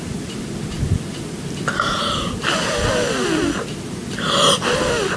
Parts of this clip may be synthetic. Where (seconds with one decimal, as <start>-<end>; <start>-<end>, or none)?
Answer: 0.0-5.2